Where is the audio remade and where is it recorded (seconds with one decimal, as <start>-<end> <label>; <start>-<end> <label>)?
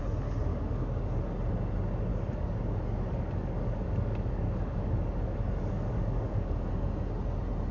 0.0-0.5 recorded; 0.5-1.2 remade; 1.2-2.1 recorded; 2.1-6.7 remade; 6.7-7.7 recorded